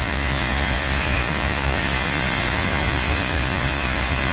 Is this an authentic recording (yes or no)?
no